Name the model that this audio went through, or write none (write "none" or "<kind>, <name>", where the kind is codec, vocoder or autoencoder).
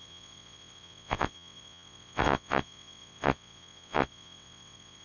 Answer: vocoder, WaveNeXt